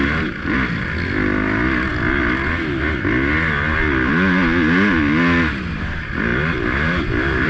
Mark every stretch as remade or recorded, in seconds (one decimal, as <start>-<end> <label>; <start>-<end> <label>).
0.0-6.3 recorded; 6.3-7.5 remade